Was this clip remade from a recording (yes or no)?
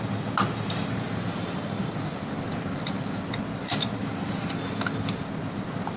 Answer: no